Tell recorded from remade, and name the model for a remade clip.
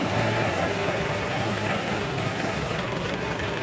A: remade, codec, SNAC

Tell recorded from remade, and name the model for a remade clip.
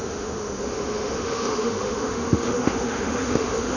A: remade, autoencoder, DAC-VAE